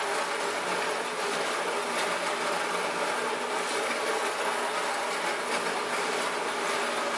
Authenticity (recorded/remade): recorded